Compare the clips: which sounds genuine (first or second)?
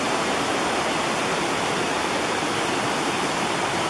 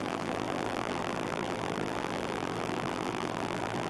first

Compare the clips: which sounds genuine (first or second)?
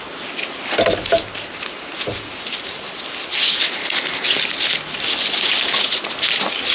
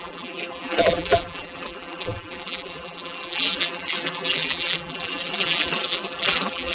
first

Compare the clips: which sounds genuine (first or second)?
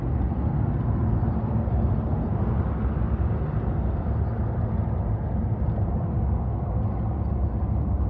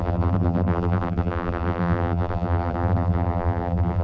first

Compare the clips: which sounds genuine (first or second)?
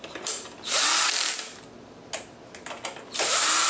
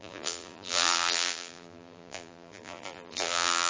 first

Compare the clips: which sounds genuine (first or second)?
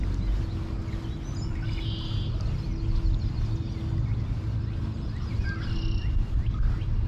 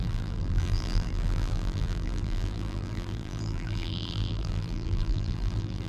first